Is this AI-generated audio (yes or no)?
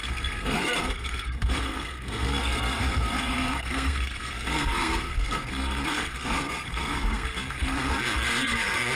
yes